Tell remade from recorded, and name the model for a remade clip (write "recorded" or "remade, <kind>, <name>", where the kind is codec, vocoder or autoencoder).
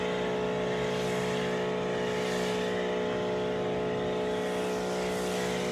recorded